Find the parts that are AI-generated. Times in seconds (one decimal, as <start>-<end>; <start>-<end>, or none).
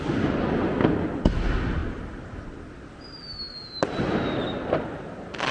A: none